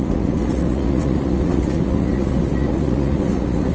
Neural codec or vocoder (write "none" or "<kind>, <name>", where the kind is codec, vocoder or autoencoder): vocoder, Vocos